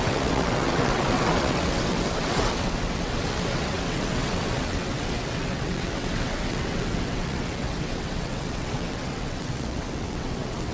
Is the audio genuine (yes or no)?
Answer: no